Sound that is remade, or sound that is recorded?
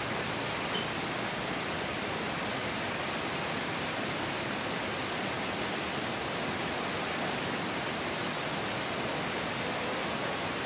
recorded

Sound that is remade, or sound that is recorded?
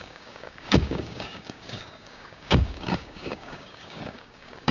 remade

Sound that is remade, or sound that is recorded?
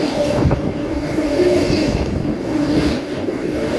remade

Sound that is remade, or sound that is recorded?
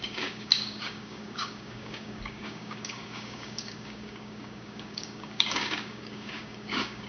remade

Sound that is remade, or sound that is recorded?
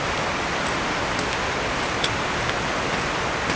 recorded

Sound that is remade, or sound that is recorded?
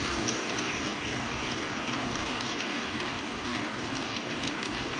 remade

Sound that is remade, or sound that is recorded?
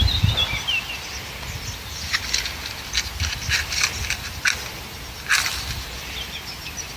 recorded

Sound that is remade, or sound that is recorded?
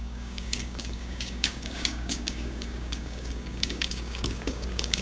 remade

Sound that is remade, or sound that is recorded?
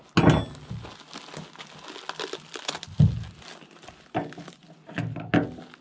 recorded